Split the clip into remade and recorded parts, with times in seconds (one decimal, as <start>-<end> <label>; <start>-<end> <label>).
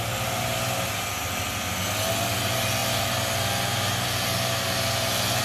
0.0-5.4 recorded